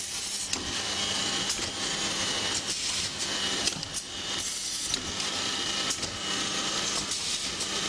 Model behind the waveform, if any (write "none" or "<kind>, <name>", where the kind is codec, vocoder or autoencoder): none